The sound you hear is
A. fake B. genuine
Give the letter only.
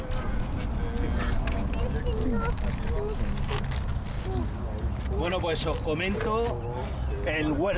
B